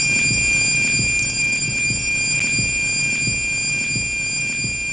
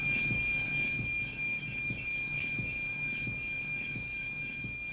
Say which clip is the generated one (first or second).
second